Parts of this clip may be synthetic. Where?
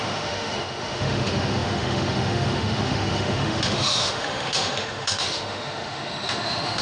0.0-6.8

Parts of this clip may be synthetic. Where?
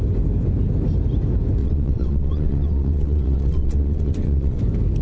1.6-4.6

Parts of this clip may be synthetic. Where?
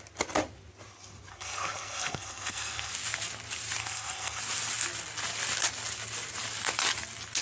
1.3-2.9; 3.8-4.4